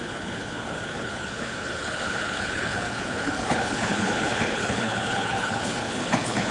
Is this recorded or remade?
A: remade